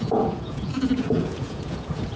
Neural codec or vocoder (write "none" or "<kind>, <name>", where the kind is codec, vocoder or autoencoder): vocoder, Vocos